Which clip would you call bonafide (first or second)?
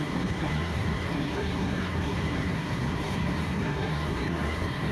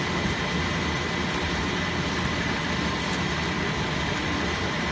second